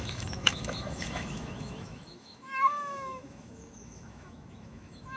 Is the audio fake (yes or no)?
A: yes